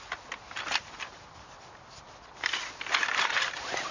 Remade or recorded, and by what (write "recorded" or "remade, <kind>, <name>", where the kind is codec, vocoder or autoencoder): recorded